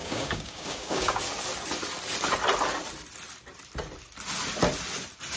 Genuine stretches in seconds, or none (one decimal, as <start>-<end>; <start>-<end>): 1.2-5.4